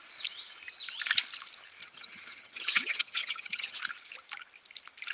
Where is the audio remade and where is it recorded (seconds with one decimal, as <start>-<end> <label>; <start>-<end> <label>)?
0.0-1.8 recorded; 1.8-3.8 remade; 3.8-5.1 recorded

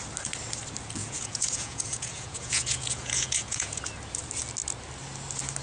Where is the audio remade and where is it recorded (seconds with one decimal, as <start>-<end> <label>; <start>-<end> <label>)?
0.0-1.0 recorded; 1.0-3.8 remade; 3.8-5.6 recorded

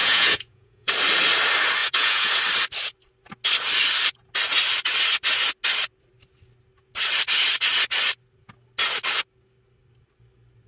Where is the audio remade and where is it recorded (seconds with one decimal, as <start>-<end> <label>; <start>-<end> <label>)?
0.0-0.9 remade; 0.9-1.8 recorded; 1.8-2.4 remade; 2.4-10.7 recorded